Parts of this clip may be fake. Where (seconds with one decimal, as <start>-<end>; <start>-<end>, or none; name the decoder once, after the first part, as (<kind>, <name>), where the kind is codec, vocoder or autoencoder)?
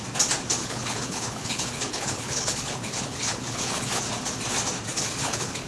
0.6-4.0 (codec, HILCodec); 4.9-5.7